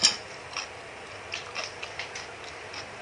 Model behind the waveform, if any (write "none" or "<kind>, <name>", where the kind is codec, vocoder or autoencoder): none